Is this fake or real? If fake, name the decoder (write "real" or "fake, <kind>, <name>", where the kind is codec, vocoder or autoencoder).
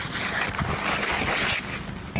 real